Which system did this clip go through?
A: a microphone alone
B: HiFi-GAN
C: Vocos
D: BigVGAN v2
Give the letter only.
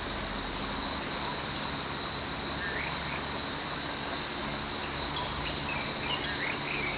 A